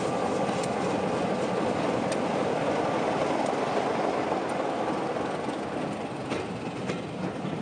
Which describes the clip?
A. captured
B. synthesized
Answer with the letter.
A